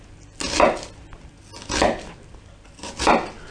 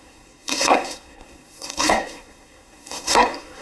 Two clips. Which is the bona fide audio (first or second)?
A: first